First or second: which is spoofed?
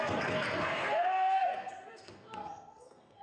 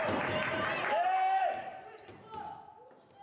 first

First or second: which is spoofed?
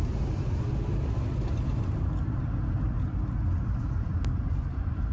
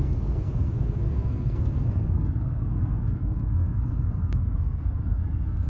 second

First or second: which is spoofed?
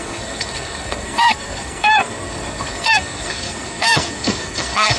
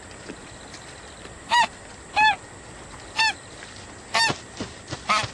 first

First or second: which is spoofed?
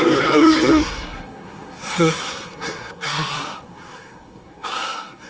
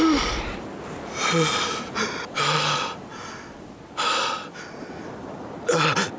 first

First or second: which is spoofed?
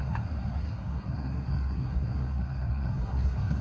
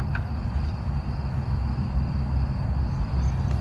first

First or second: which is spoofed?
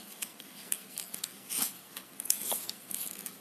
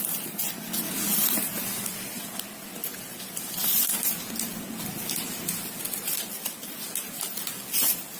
first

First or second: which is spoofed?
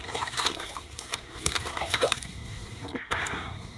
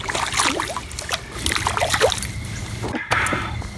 first